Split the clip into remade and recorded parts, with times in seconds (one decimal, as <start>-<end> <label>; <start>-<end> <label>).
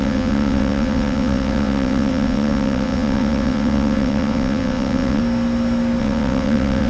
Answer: 0.0-5.2 remade; 5.2-6.0 recorded; 6.0-6.9 remade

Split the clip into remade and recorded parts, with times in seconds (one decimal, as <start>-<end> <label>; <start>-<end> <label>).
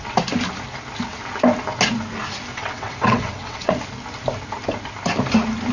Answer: 0.0-2.5 recorded; 2.5-3.7 remade; 3.7-5.7 recorded